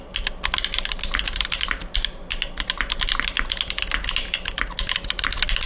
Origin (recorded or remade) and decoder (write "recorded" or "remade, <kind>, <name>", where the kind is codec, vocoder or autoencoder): recorded